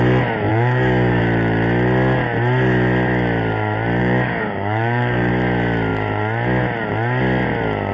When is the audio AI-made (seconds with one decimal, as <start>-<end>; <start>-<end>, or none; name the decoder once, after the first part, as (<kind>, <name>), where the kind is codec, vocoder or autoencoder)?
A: 0.5-1.2 (codec, DAC); 4.0-5.3